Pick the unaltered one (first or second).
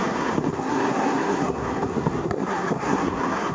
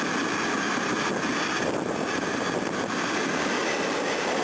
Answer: second